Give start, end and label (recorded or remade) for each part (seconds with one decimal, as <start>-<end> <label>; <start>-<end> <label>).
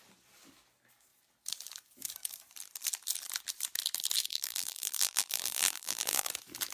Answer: 0.0-4.3 recorded; 4.3-6.3 remade; 6.3-6.7 recorded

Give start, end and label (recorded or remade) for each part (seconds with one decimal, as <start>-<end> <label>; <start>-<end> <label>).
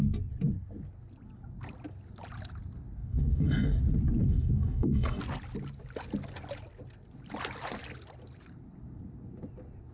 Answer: 0.0-3.0 recorded; 3.0-3.8 remade; 3.8-4.2 recorded; 4.2-5.2 remade; 5.2-9.9 recorded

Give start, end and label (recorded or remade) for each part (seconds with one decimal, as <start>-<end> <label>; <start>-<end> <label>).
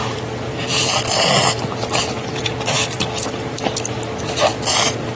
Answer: 0.0-1.0 remade; 1.0-5.2 recorded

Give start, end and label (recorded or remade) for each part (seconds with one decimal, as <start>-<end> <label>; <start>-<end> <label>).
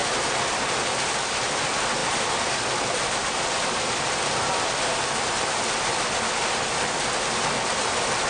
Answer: 0.0-8.3 recorded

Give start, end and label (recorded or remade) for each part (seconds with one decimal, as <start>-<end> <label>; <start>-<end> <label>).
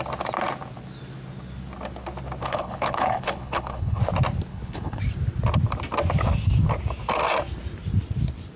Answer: 0.0-2.4 recorded; 2.4-4.0 remade; 4.0-4.5 recorded; 4.5-5.0 remade; 5.0-8.6 recorded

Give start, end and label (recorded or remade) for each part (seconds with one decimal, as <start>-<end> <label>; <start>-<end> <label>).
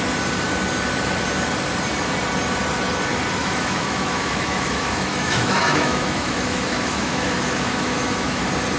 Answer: 0.0-3.4 recorded; 3.4-8.4 remade; 8.4-8.8 recorded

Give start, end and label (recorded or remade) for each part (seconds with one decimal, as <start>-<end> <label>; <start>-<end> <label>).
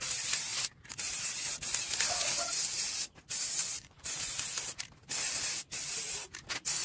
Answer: 0.0-3.6 recorded; 3.6-4.3 remade; 4.3-6.8 recorded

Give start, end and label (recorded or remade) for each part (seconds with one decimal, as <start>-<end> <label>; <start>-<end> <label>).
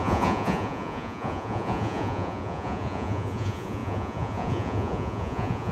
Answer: 0.0-5.7 remade